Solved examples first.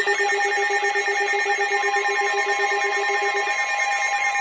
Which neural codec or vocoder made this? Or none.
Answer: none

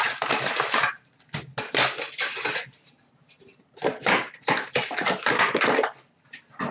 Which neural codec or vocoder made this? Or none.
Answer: none